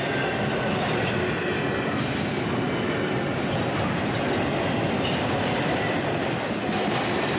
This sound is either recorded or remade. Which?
recorded